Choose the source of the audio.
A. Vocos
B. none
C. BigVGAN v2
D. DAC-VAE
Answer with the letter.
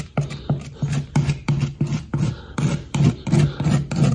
B